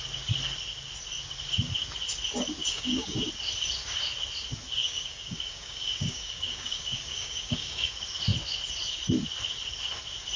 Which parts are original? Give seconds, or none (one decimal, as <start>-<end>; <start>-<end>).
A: 0.0-2.6; 3.3-4.8; 7.9-10.4